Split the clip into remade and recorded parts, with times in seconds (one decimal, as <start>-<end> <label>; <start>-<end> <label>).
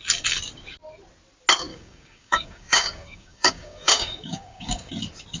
0.0-1.7 recorded; 1.7-4.9 remade; 4.9-5.4 recorded